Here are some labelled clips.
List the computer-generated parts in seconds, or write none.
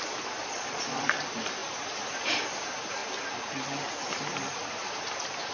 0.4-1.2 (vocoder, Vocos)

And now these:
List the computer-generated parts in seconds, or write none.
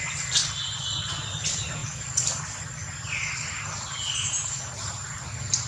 none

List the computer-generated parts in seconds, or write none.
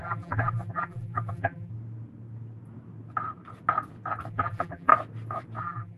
0.0-1.7 (vocoder, BigVGAN v2); 4.3-4.9; 5.6-6.0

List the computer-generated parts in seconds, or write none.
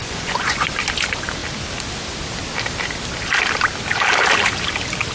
0.0-0.7 (vocoder, Vocos)